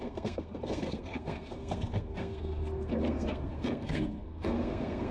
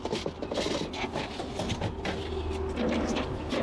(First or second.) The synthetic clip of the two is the first